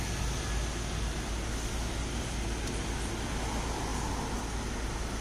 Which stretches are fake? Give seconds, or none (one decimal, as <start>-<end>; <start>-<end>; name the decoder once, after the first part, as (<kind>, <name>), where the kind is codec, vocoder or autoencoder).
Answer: none